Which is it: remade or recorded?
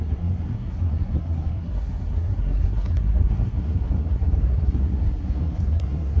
remade